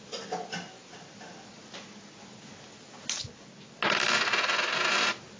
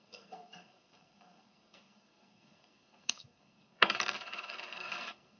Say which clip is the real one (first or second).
first